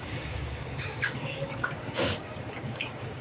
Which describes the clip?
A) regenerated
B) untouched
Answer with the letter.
A